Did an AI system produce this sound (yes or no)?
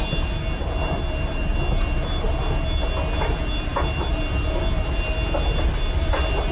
no